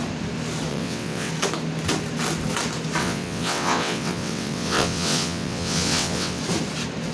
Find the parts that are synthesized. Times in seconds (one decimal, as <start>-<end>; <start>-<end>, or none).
0.7-1.3; 3.0-6.4